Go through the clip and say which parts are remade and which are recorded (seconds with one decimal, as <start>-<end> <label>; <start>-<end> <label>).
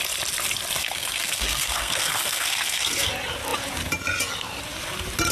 0.0-0.8 recorded; 0.8-3.1 remade; 3.1-5.3 recorded